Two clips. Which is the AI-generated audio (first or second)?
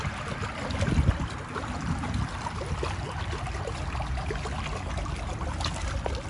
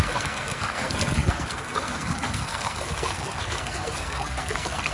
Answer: second